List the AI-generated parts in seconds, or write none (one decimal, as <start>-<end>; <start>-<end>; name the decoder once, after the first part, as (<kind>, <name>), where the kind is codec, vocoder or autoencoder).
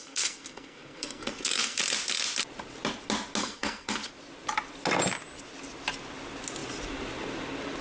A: 0.0-1.8 (codec, SNAC); 3.4-4.1